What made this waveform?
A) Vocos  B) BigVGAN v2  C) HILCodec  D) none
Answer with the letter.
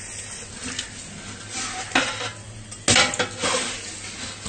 D